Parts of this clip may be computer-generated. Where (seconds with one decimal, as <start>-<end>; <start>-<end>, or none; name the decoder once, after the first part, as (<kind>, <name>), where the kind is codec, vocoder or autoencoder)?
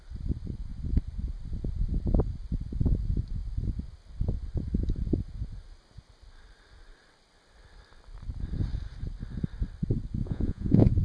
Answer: 10.2-11.0 (vocoder, Vocos)